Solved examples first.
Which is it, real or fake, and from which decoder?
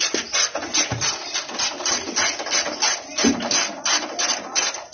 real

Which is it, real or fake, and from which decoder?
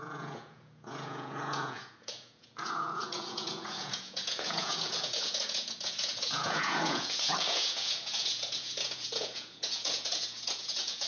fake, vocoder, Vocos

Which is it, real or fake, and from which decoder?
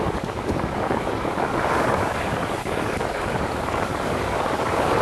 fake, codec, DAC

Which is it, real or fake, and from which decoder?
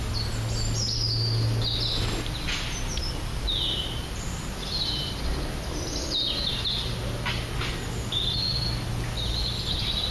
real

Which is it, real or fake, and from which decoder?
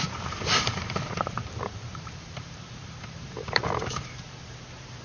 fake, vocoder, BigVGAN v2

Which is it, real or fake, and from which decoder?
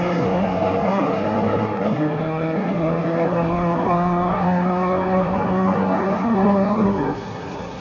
fake, codec, SNAC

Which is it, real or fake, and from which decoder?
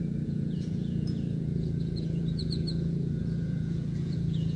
fake, vocoder, Vocos